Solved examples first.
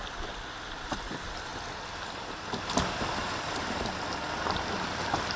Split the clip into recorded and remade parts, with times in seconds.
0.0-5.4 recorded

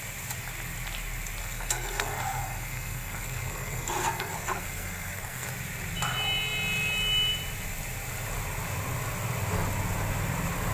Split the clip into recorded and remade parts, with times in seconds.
0.0-1.4 recorded; 1.4-5.5 remade; 5.5-10.7 recorded

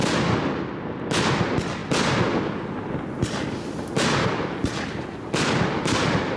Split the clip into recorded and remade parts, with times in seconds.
0.0-6.4 recorded

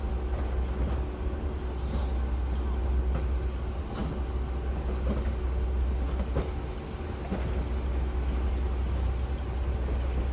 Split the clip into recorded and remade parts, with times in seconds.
0.0-10.3 recorded